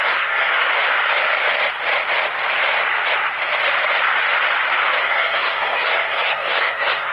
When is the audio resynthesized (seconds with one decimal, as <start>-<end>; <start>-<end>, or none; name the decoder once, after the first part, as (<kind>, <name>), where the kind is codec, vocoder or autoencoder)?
0.0-0.7 (codec, SNAC); 5.0-7.1